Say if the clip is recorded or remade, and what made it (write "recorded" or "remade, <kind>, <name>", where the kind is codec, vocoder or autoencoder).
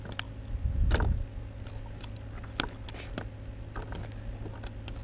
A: recorded